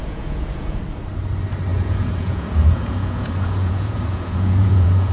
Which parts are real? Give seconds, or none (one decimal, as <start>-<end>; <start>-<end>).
0.8-1.7